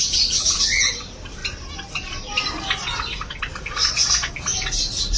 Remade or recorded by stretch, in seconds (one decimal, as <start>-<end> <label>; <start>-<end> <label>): 0.0-5.2 recorded